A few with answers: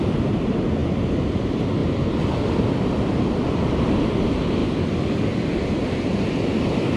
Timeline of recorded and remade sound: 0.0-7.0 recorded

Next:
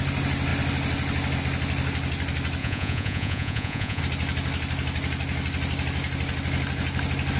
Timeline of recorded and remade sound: 0.0-2.6 recorded; 2.6-4.0 remade; 4.0-7.4 recorded

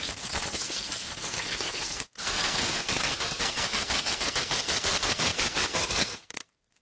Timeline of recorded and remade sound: 0.0-6.8 remade

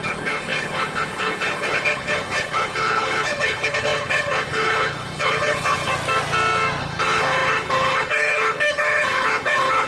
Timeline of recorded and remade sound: 0.0-5.9 remade; 5.9-6.8 recorded; 6.8-9.9 remade